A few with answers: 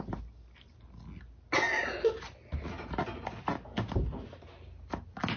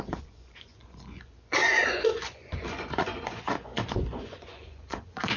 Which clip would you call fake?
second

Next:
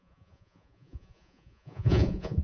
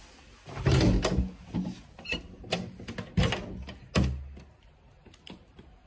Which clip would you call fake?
first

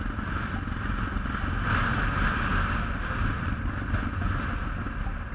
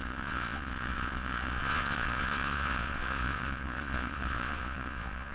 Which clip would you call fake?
second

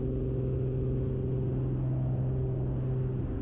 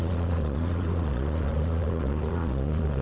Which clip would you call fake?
second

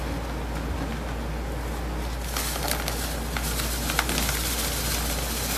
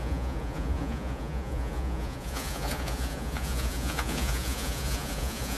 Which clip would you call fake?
second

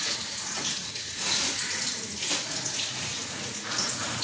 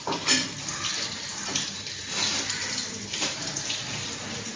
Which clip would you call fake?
first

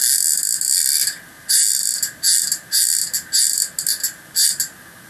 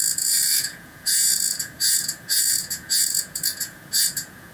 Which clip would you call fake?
second